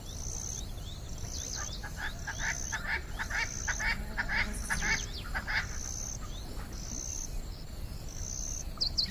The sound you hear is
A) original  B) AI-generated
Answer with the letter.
A